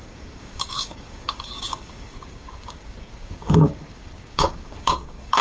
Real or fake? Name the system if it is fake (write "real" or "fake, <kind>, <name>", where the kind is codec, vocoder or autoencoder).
fake, codec, DAC